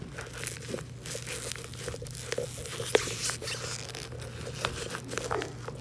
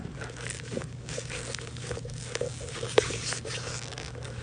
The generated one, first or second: second